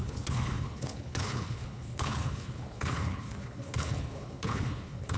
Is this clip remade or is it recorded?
remade